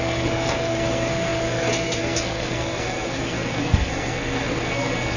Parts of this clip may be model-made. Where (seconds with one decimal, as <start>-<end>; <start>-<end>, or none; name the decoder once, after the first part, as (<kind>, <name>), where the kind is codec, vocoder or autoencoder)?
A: 0.0-5.2 (codec, SNAC)